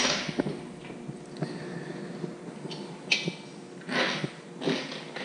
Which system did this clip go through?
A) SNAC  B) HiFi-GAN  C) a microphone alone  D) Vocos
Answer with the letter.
C